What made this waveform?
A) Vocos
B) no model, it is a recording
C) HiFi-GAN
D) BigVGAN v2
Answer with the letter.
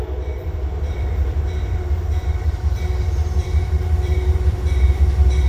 D